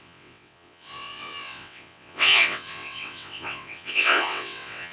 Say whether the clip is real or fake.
fake